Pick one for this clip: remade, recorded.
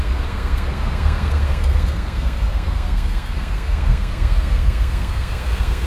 remade